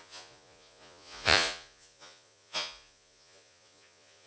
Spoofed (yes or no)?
yes